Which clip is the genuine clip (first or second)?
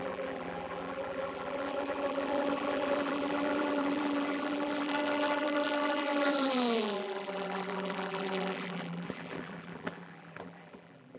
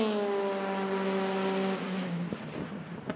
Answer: second